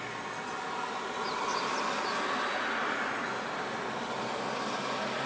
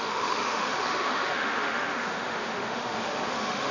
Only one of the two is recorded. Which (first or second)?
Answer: first